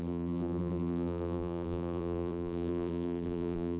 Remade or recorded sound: remade